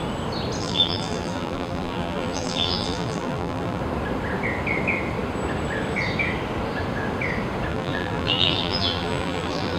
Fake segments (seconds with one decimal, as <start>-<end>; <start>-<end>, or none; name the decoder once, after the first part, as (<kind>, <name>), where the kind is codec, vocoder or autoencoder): 0.6-3.8 (vocoder, BigVGAN v2); 7.7-9.8